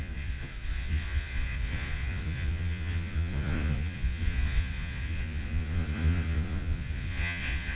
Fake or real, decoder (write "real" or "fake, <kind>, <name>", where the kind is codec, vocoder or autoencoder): fake, vocoder, Vocos